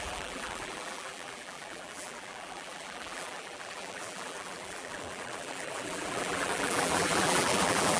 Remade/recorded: remade